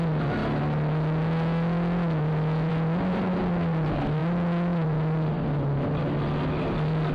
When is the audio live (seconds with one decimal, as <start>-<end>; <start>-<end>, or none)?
0.0-7.1